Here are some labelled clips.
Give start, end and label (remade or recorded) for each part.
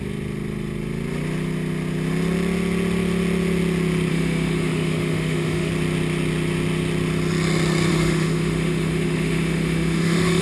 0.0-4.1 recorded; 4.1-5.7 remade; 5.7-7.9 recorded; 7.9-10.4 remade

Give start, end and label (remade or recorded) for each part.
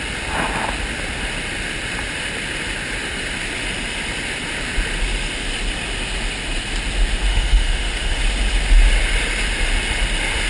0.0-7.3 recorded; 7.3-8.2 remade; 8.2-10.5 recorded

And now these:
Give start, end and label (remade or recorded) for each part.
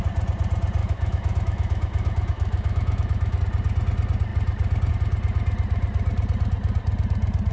0.0-0.8 recorded; 0.8-3.4 remade; 3.4-7.5 recorded